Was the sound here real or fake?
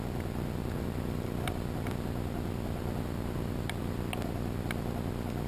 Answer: real